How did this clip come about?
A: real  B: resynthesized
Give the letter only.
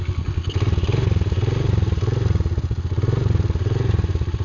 A